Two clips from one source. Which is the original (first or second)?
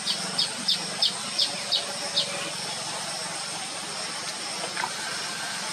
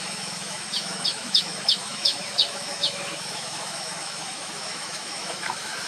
first